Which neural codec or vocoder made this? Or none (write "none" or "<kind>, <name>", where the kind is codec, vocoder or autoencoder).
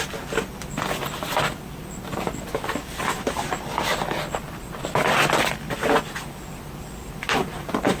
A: none